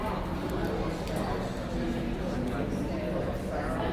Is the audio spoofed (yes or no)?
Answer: no